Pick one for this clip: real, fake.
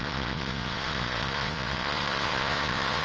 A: fake